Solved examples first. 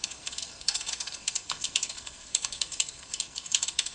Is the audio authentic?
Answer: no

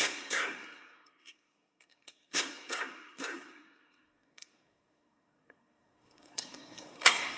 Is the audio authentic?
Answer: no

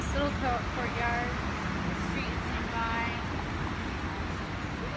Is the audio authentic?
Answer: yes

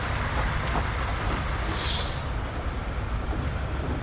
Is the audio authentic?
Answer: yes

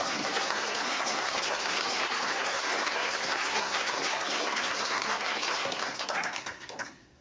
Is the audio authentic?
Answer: no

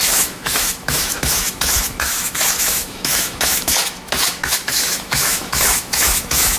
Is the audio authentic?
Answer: no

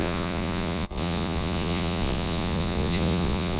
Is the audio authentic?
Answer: no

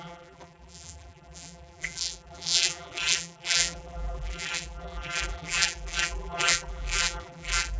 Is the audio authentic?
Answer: no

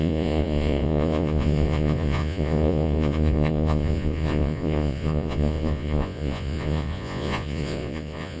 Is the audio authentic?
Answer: no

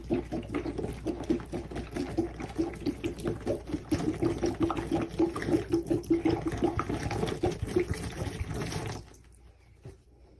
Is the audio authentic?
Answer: yes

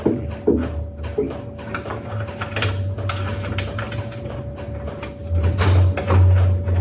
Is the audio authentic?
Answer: yes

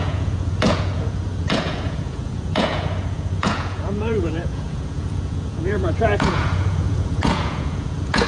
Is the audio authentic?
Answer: no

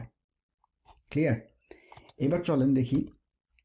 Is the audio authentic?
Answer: yes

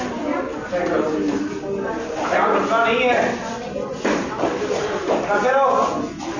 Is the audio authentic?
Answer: yes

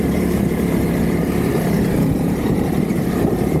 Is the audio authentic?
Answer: no